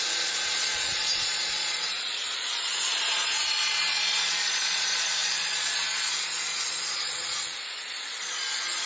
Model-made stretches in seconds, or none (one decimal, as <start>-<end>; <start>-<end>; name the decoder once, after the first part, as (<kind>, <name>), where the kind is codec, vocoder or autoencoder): 0.0-8.9 (vocoder, Vocos)